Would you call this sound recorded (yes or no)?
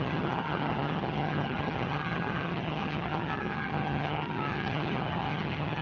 no